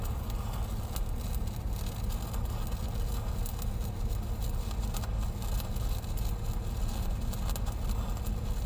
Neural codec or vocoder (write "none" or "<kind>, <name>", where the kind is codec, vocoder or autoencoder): none